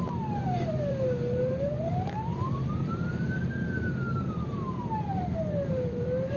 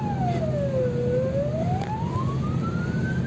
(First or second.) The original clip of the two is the second